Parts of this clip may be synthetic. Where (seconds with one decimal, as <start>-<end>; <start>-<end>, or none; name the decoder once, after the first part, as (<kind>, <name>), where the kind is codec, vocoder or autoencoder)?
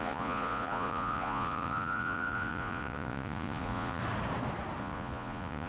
0.0-4.0 (vocoder, Vocos); 4.8-5.7